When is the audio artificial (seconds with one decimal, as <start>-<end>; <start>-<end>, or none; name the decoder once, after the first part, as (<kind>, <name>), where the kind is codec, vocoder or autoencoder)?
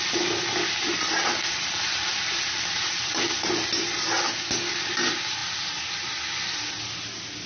none